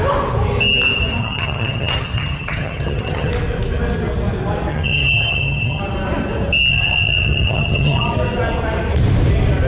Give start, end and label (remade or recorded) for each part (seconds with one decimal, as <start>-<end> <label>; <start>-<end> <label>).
0.0-1.2 recorded; 1.2-3.3 remade; 3.3-4.7 recorded; 4.7-5.8 remade; 5.8-6.7 recorded; 6.7-8.1 remade; 8.1-9.7 recorded